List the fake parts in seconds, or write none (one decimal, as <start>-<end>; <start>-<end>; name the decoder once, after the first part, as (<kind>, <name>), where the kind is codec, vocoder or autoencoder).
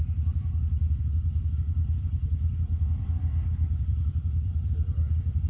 0.0-5.5 (vocoder, BigVGAN v2)